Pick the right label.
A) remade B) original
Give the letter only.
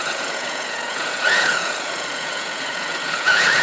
A